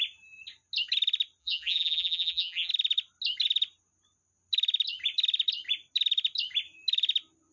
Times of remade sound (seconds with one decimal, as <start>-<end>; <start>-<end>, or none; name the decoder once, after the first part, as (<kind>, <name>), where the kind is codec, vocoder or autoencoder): 1.4-2.7 (vocoder, BigVGAN v2)